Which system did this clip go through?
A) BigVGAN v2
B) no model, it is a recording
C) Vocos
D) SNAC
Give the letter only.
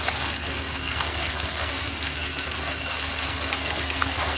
D